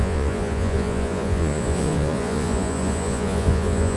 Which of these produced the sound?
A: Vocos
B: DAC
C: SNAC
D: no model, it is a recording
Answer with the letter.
A